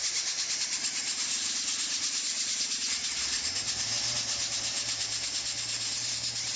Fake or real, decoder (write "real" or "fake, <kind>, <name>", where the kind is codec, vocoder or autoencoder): real